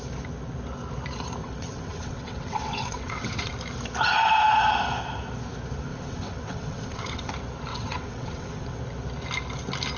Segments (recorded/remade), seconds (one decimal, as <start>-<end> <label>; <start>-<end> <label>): 0.0-1.4 recorded; 1.4-3.5 remade; 3.5-5.9 recorded; 5.9-7.3 remade; 7.3-7.7 recorded; 7.7-8.8 remade; 8.8-10.0 recorded